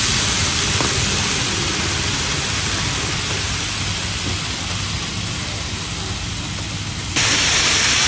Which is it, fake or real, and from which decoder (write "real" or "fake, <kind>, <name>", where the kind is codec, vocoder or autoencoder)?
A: real